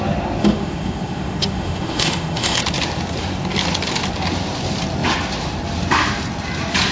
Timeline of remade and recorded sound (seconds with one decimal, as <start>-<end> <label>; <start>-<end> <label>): 0.0-0.4 recorded; 0.4-2.6 remade; 2.6-6.9 recorded